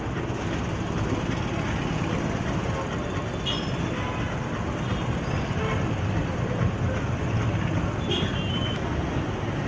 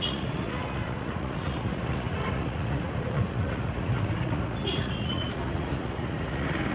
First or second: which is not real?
second